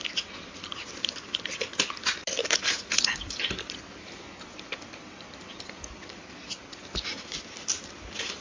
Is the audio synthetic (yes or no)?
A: no